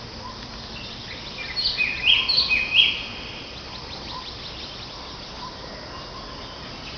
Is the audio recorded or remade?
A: recorded